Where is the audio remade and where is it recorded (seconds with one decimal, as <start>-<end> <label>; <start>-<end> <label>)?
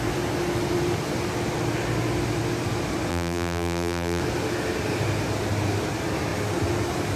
0.0-3.1 recorded; 3.1-4.2 remade; 4.2-7.2 recorded